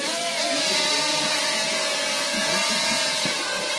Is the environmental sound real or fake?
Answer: fake